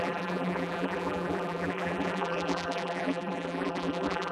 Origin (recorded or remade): remade